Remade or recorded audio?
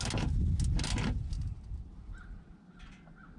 recorded